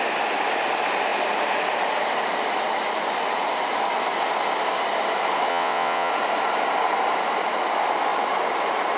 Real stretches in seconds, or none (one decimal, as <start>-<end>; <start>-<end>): 0.0-5.5; 6.1-9.0